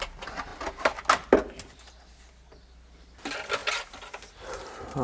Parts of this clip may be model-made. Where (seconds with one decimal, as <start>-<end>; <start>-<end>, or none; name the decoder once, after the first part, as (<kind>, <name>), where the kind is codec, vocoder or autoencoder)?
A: none